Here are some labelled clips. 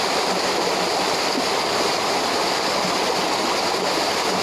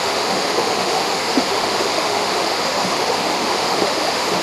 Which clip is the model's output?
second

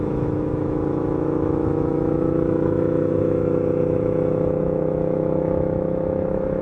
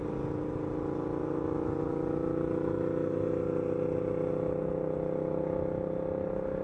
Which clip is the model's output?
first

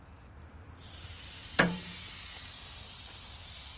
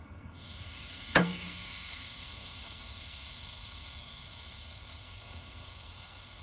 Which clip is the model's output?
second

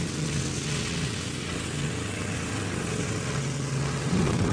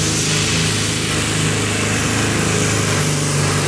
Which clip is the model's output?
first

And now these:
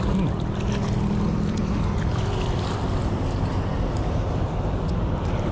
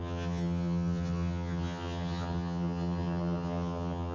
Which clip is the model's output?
second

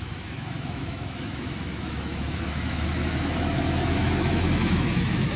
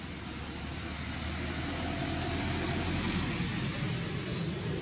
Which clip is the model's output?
first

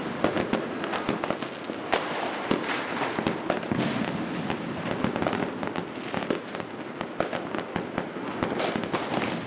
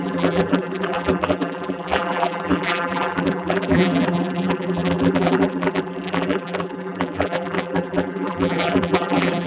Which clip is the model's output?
second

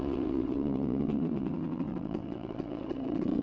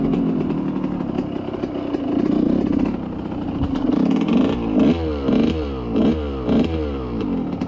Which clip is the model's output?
first